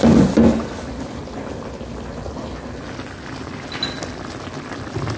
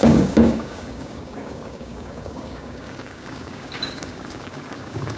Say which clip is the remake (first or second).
second